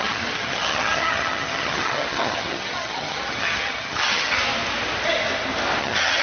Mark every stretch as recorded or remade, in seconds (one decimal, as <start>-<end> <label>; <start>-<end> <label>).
0.0-4.4 remade; 4.4-5.8 recorded; 5.8-6.2 remade